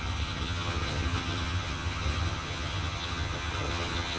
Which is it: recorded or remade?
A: remade